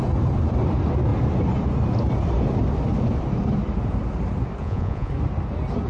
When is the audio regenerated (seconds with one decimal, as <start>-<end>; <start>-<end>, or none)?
4.6-5.1